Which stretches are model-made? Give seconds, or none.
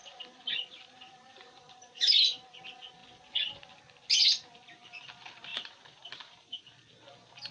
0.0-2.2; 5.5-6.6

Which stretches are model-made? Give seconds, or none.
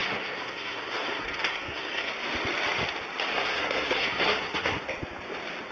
0.0-2.1; 3.3-4.8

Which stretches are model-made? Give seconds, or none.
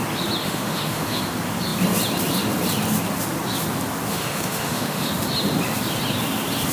0.4-1.2; 4.1-5.1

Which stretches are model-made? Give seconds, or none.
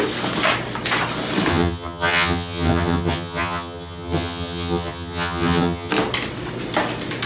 1.5-5.9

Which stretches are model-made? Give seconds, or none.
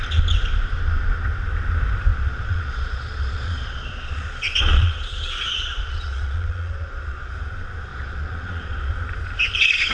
2.1-7.3; 7.9-8.9